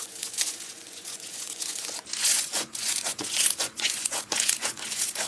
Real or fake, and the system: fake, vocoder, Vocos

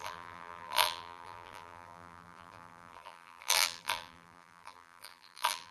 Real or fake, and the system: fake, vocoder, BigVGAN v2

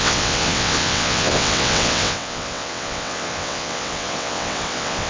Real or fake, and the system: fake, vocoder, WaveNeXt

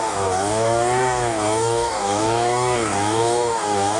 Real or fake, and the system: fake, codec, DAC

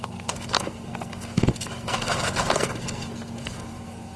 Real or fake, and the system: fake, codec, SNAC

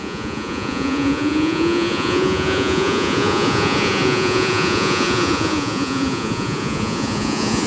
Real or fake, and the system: fake, vocoder, Vocos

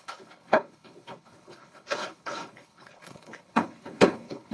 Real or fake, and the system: fake, codec, HILCodec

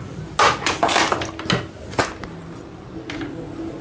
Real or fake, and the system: real